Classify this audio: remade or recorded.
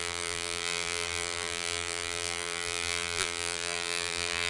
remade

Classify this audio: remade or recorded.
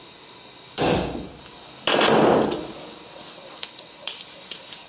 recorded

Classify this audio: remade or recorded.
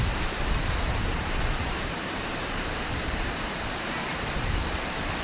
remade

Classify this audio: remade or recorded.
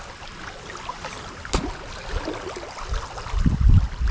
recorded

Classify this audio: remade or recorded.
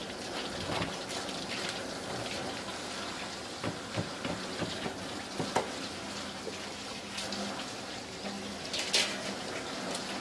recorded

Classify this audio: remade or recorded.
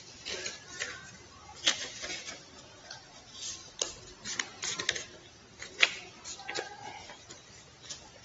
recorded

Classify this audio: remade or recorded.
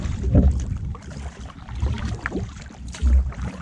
remade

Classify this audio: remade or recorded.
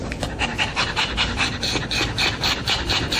recorded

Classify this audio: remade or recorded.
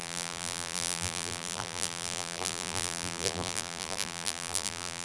remade